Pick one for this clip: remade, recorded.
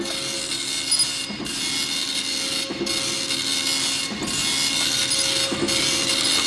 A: recorded